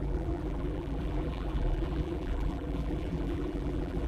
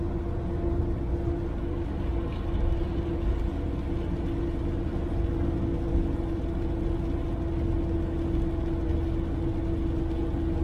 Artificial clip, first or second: first